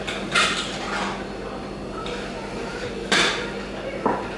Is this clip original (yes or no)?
yes